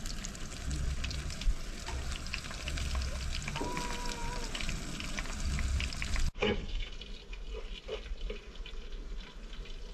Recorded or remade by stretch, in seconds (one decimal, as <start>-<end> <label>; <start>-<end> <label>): 0.0-6.4 recorded; 6.4-6.9 remade; 6.9-9.9 recorded